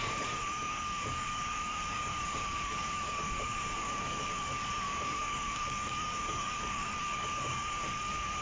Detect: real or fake fake